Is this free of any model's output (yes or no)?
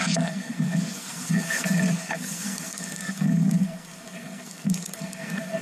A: no